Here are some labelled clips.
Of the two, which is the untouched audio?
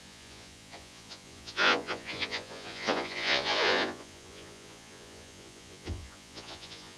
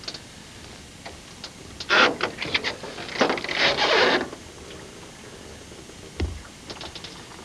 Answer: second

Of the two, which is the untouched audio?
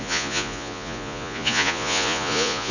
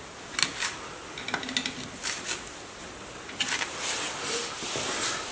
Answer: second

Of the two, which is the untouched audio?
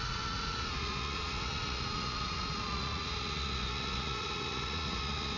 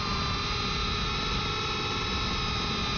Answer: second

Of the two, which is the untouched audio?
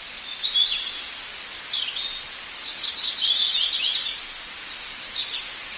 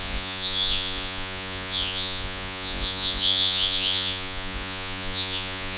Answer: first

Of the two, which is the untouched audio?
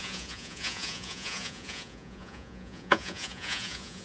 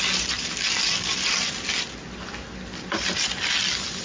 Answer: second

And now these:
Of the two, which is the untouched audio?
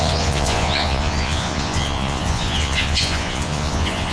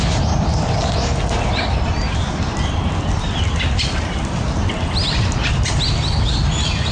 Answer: second